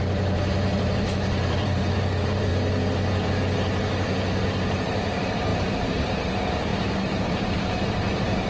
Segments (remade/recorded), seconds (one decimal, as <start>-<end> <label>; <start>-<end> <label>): 0.0-2.5 remade; 2.5-4.4 recorded; 4.4-8.5 remade